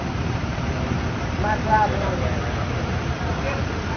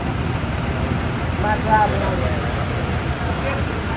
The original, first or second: second